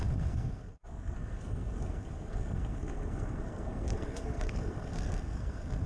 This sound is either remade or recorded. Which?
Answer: remade